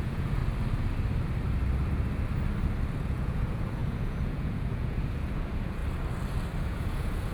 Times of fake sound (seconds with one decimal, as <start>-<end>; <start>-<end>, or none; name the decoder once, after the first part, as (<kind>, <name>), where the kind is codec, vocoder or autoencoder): 0.0-0.4 (vocoder, Vocos); 3.0-5.8; 6.6-7.3